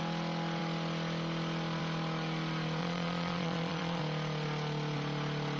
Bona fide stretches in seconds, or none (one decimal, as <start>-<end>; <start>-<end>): 0.0-2.8; 4.0-5.6